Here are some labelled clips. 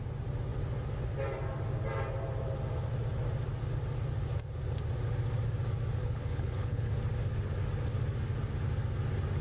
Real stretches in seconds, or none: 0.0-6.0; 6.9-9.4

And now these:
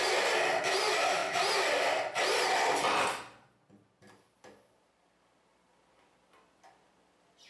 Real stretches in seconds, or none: 0.0-7.5

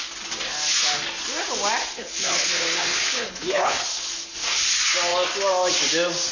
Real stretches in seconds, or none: 0.0-1.9; 4.6-6.3